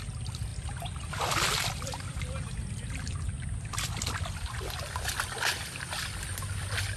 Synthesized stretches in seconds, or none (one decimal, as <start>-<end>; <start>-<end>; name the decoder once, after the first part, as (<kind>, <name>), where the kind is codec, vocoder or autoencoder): none

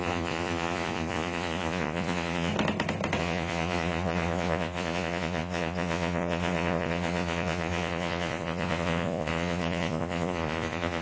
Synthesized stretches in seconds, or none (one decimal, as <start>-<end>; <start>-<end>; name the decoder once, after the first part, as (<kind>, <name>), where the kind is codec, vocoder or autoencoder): 0.0-2.5 (vocoder, Vocos); 3.2-11.0

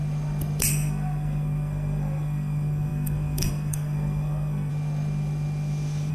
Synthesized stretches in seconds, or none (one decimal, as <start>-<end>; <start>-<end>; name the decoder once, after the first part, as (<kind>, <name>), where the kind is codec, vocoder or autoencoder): 0.7-4.7 (codec, SNAC)

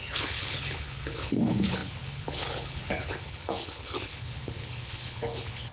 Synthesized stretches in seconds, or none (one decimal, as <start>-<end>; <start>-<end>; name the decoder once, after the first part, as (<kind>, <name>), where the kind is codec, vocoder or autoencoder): 0.0-5.7 (codec, HILCodec)

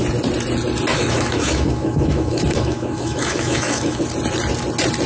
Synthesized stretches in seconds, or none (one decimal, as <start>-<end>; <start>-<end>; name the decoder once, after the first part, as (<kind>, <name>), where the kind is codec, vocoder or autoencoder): 0.9-4.0 (autoencoder, DAC-VAE)

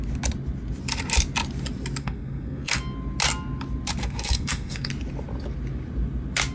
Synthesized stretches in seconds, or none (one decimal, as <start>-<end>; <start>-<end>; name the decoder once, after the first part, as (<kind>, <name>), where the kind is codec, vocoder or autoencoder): 2.0-2.8 (codec, SNAC); 4.0-4.9